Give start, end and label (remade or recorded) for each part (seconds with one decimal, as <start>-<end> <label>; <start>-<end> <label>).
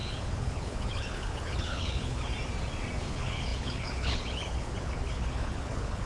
0.0-2.3 remade; 2.3-3.0 recorded; 3.0-6.1 remade